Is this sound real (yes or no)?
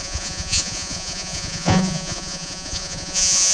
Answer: no